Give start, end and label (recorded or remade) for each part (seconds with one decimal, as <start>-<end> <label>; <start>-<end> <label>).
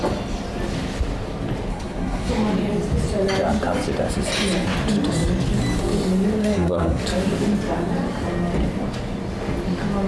0.0-1.7 recorded; 1.7-2.3 remade; 2.3-6.4 recorded; 6.4-7.0 remade; 7.0-10.1 recorded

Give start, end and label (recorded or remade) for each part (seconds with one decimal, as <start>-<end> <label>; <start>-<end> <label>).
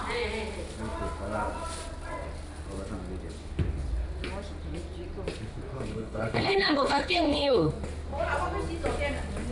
0.0-5.9 recorded; 5.9-7.7 remade; 7.7-9.5 recorded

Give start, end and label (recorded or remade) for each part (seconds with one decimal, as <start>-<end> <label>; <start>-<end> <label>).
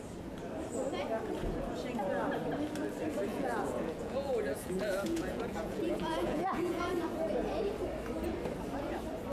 0.0-3.3 recorded; 3.3-6.9 remade; 6.9-9.3 recorded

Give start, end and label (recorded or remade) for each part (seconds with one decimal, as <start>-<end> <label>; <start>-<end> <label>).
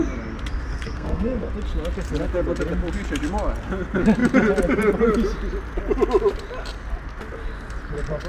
0.0-0.7 recorded; 0.7-1.5 remade; 1.5-8.3 recorded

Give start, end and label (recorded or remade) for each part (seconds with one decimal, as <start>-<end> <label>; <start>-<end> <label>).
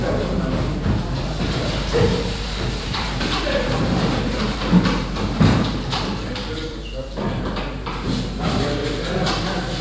0.0-8.8 remade; 8.8-9.8 recorded